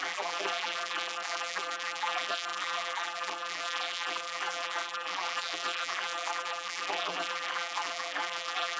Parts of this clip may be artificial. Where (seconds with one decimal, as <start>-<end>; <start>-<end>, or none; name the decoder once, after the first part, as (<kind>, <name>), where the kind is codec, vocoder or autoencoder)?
0.0-8.8 (vocoder, BigVGAN v2)

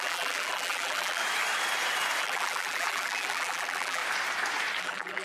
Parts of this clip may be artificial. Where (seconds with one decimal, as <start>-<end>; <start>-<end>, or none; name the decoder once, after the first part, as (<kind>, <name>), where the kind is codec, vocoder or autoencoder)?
0.0-1.2 (vocoder, BigVGAN v2); 2.2-4.0; 4.8-5.2

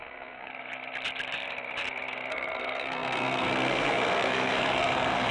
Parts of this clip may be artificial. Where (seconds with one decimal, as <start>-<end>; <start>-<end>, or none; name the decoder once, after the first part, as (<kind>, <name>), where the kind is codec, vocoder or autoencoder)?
0.0-0.5 (codec, SNAC); 2.3-5.3